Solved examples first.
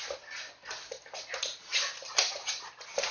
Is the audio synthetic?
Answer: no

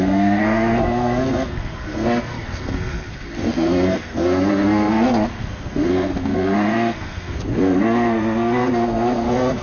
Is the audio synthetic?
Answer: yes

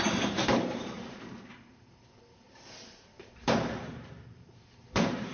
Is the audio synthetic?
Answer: yes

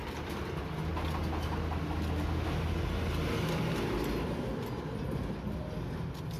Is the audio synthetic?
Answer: no